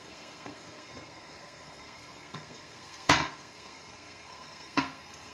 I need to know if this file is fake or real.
fake